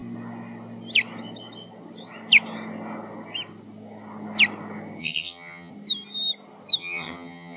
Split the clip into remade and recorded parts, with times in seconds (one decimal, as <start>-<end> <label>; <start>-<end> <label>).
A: 0.0-5.0 recorded; 5.0-5.7 remade; 5.7-6.8 recorded; 6.8-7.6 remade